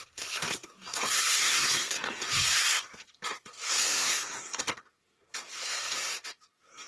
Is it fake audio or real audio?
fake